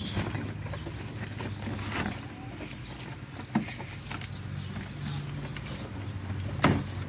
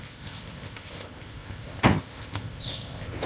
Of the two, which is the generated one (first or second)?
second